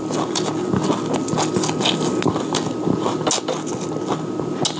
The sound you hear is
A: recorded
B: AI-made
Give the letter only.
A